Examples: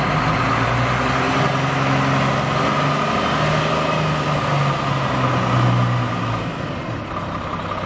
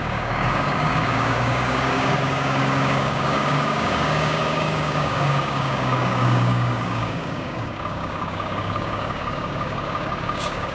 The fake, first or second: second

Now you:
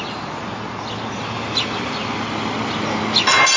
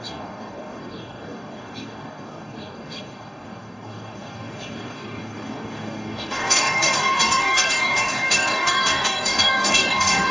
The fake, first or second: second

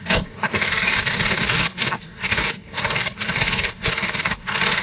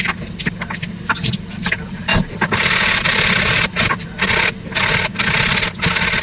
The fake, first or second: first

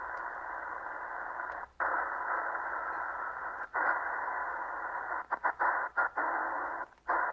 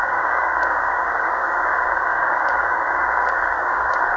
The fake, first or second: second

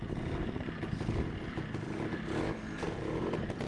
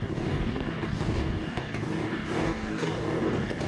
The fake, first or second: second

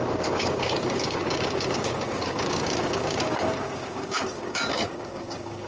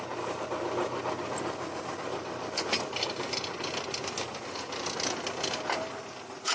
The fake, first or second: first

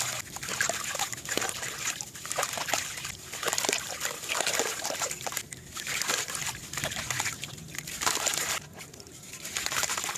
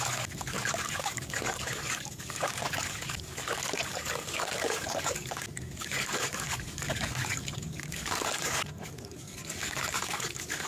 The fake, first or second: second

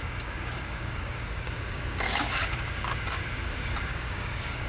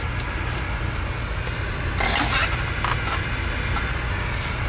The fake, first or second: first